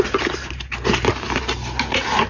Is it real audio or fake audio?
real